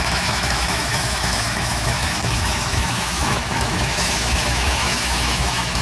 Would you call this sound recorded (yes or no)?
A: no